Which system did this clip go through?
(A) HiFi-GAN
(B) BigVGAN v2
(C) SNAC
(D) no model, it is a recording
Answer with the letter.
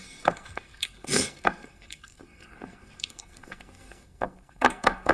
C